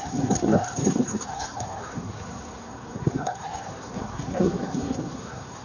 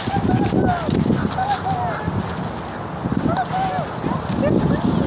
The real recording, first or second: second